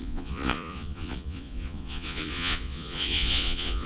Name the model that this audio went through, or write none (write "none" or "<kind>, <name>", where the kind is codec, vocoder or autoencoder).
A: vocoder, Vocos